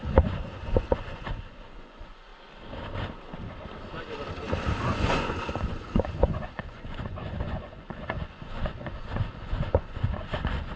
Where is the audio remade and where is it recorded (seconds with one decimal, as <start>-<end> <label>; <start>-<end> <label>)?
0.0-2.3 remade; 2.3-4.8 recorded; 4.8-10.8 remade